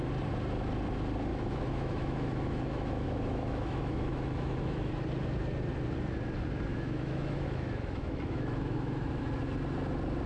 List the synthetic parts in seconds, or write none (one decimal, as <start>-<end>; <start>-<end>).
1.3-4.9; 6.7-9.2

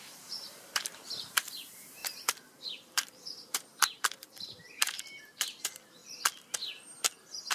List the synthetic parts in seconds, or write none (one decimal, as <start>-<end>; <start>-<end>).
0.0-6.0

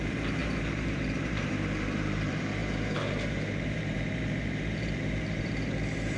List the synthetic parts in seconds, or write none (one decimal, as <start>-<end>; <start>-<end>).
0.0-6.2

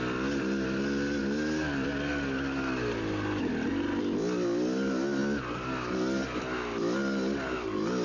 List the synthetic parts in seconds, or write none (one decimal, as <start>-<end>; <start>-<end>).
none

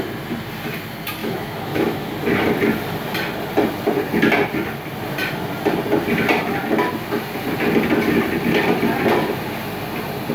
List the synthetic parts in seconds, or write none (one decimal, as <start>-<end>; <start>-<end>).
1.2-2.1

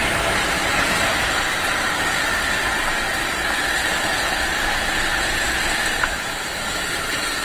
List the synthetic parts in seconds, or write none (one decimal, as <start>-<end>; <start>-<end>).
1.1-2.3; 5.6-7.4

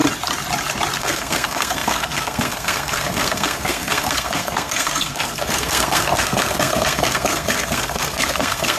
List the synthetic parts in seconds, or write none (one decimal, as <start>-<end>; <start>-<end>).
1.0-8.8

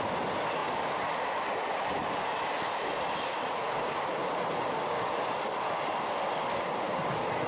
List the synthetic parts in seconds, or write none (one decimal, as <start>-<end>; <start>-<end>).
none